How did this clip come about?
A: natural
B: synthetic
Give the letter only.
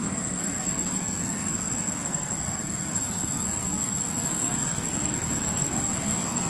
B